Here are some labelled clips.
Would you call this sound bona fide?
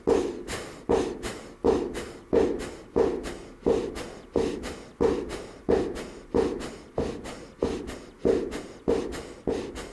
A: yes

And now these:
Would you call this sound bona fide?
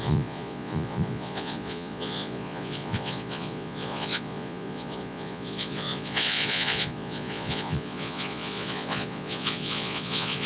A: no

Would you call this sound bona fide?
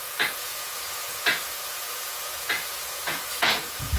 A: no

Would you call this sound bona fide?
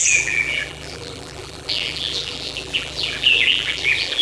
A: no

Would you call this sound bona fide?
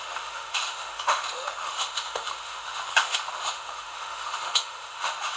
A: no